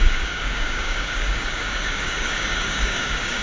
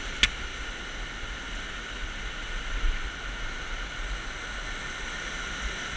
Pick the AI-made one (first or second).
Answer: first